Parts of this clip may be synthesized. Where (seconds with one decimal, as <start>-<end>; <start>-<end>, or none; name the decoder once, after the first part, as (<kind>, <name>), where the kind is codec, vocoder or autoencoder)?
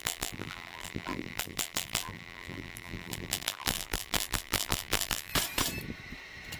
0.0-5.3 (vocoder, BigVGAN v2)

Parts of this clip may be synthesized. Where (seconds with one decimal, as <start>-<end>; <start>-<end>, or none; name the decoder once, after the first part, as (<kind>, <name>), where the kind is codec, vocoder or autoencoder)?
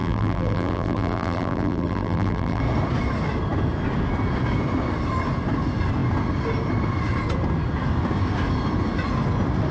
0.0-2.6 (vocoder, BigVGAN v2)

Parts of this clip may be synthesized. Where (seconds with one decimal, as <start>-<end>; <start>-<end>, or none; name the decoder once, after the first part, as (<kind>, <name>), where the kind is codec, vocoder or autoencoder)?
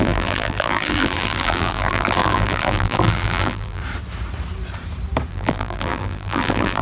0.0-3.8 (vocoder, BigVGAN v2); 5.3-6.8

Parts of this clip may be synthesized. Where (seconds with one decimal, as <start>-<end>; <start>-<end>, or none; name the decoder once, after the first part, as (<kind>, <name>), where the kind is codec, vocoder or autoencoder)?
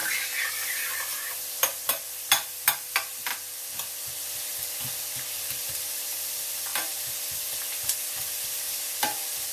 0.5-3.3 (vocoder, BigVGAN v2); 4.6-9.5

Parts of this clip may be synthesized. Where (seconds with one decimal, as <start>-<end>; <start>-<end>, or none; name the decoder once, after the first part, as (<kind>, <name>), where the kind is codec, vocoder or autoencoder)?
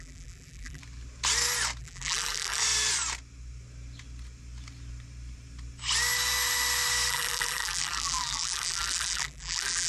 0.0-0.8 (vocoder, BigVGAN v2); 1.8-2.6; 7.1-9.9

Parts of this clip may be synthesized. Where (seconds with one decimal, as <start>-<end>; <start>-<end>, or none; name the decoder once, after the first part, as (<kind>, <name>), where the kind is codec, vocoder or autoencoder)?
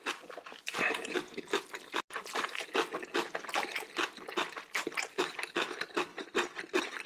none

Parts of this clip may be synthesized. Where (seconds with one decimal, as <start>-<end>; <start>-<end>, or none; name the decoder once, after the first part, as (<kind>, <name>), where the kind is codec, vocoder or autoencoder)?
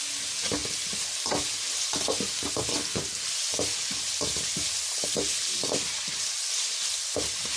none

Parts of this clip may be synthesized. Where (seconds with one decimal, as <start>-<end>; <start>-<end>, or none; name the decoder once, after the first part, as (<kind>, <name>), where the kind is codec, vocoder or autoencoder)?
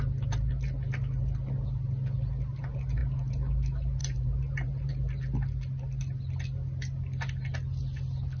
4.0-4.9 (vocoder, BigVGAN v2)